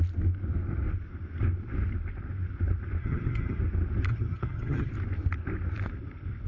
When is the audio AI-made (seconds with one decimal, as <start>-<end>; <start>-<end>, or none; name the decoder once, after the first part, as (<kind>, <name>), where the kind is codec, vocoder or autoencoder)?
3.0-3.6 (vocoder, HiFi-GAN); 4.1-4.9